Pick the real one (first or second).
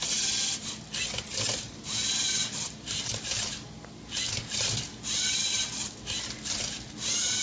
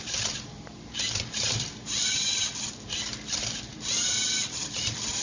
first